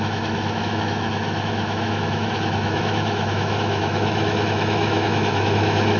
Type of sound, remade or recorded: remade